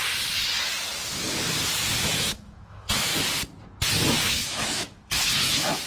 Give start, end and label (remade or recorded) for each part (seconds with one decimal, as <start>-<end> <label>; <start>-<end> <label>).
0.0-2.0 recorded; 2.0-3.1 remade; 3.1-4.3 recorded; 4.3-5.9 remade